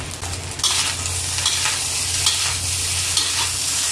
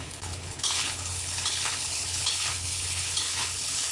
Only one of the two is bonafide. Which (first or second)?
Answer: first